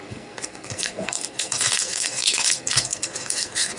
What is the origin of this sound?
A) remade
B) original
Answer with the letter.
A